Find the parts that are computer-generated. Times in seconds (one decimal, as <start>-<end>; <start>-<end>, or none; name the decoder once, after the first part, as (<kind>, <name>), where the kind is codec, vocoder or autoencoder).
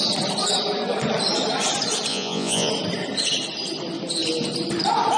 2.1-2.7 (vocoder, Vocos)